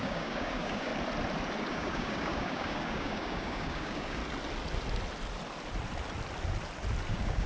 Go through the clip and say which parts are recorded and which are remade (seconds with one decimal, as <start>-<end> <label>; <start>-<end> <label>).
0.0-0.9 remade; 0.9-1.7 recorded; 1.7-4.2 remade; 4.2-7.1 recorded; 7.1-7.5 remade